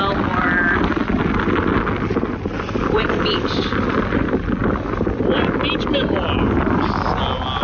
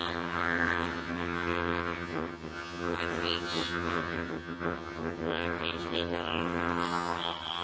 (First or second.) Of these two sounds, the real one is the first